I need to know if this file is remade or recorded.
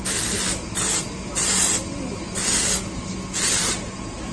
recorded